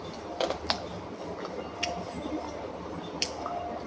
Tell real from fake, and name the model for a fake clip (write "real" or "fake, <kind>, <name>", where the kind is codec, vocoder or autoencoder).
real